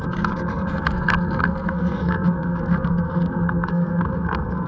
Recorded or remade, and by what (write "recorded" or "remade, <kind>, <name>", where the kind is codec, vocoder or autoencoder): remade, codec, SNAC